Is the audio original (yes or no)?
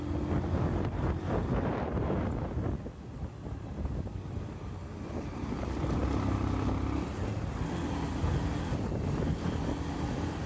yes